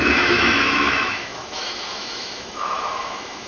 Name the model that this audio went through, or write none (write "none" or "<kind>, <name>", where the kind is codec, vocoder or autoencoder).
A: autoencoder, DAC-VAE